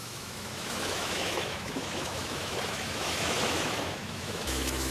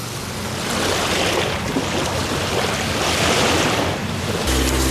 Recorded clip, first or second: second